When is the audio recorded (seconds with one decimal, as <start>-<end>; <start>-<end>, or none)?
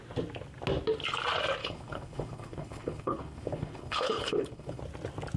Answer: 0.0-1.6; 4.8-5.4